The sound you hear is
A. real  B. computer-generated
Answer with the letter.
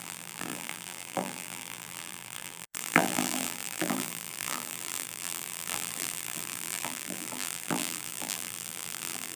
B